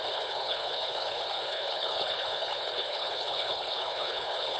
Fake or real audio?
fake